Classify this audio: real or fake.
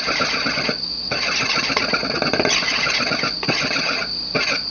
real